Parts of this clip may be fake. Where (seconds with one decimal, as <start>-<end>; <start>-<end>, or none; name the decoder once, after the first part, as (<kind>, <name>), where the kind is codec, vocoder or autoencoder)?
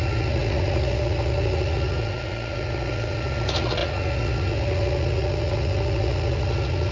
0.0-6.9 (vocoder, Vocos)